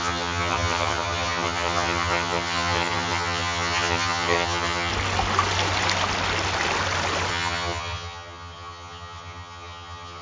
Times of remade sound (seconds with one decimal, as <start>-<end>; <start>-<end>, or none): 0.0-4.9; 7.3-10.2